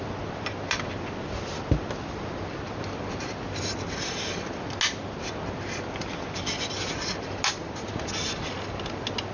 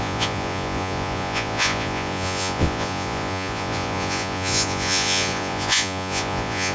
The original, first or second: first